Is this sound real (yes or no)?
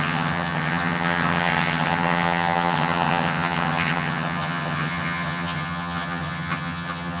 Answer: no